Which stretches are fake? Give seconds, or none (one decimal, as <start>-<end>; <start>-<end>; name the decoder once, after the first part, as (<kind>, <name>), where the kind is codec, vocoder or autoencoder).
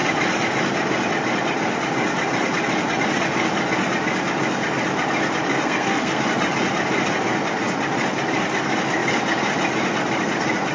5.5-6.2 (codec, SNAC)